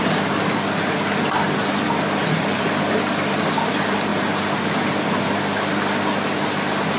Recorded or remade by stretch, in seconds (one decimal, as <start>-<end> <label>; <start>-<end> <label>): 0.0-7.0 recorded